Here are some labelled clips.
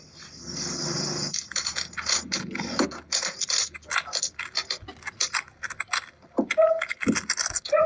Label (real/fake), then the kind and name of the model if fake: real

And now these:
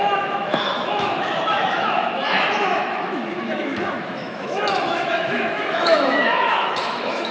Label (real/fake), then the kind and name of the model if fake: fake, autoencoder, DAC-VAE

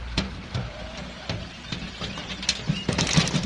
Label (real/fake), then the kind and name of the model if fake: fake, vocoder, BigVGAN v2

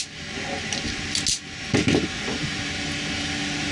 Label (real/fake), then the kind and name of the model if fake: real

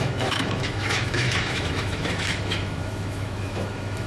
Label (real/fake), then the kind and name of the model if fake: fake, autoencoder, DAC-VAE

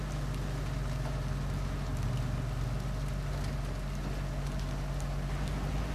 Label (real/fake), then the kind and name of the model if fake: real